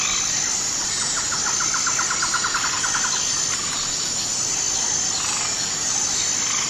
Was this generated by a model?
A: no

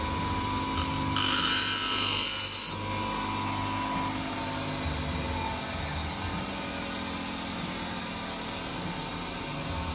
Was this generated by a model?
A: no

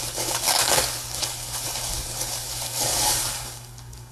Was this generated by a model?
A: yes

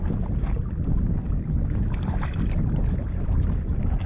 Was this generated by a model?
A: no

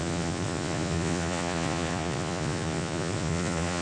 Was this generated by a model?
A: yes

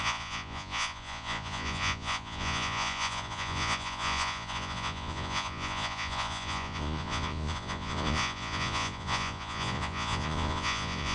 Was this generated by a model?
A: yes